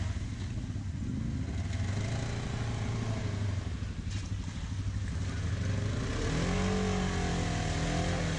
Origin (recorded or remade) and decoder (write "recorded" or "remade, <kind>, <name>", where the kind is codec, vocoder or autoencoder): recorded